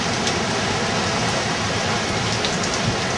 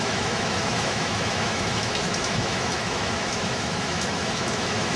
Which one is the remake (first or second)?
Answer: second